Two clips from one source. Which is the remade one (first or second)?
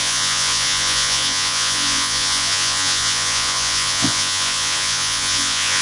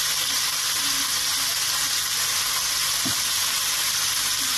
first